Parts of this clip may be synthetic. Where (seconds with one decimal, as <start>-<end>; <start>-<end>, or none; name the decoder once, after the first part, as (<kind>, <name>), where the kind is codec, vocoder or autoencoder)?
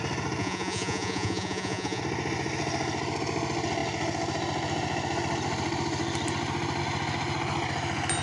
0.4-2.0 (vocoder, Vocos)